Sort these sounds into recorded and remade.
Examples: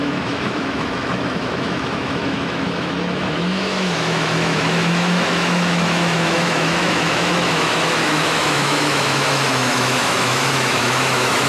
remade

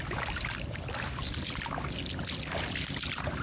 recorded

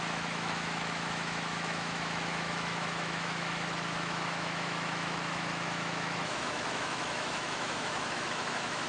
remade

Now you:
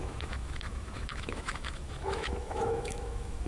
remade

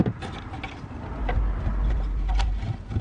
recorded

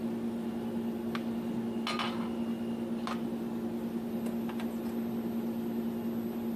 recorded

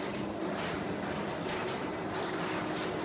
recorded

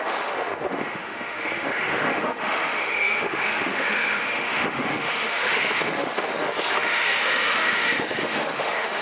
remade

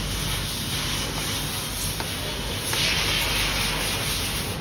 recorded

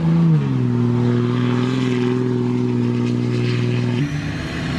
recorded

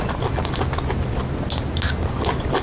recorded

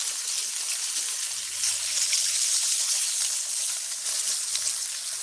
recorded